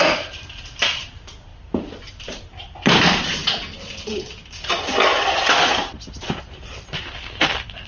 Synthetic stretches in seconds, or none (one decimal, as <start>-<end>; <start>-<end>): 0.0-1.5; 2.1-3.4; 6.4-7.9